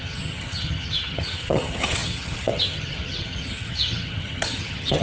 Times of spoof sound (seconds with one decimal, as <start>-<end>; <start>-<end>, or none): 0.0-5.0

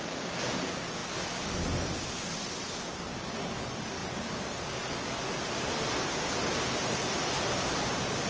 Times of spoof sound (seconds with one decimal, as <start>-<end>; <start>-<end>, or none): none

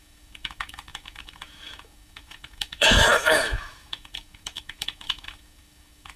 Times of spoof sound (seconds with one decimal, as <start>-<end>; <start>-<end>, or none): 0.0-6.2

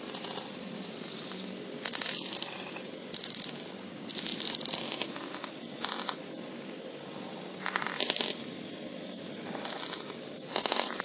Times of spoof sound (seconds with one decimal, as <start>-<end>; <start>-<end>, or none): none

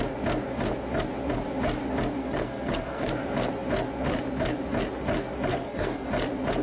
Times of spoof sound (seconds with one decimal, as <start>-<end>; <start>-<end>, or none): 2.2-3.1; 5.5-6.1

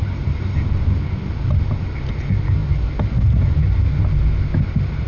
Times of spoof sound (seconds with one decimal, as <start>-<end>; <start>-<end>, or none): none

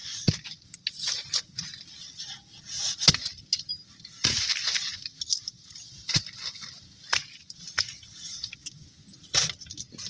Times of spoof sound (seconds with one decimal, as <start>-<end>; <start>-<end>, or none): none